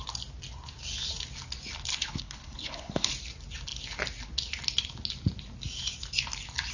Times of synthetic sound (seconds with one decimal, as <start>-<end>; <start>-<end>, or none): 1.9-3.1